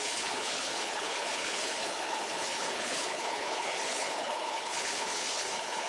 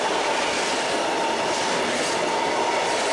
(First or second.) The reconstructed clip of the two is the first